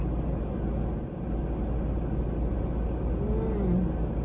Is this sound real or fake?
real